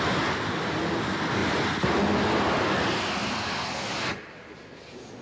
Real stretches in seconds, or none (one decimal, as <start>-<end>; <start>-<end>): 0.0-5.2